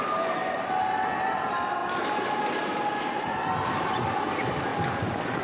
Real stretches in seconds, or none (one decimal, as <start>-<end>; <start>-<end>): 1.8-2.5; 4.7-5.4